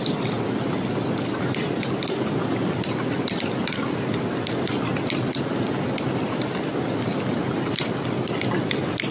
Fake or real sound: real